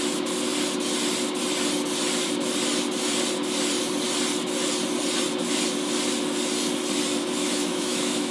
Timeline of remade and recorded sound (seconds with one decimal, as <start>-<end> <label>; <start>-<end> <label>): 0.0-7.4 recorded; 7.4-8.3 remade